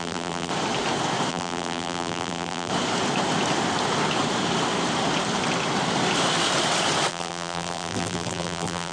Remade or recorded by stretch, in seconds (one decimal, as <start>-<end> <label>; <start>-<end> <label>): 0.0-0.5 remade; 0.5-1.3 recorded; 1.3-2.7 remade; 2.7-7.1 recorded; 7.1-8.9 remade